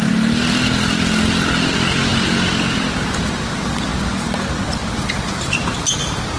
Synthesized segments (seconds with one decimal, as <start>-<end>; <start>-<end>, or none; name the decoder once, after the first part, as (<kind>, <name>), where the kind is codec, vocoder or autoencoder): none